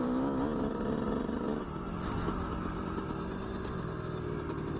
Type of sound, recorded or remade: recorded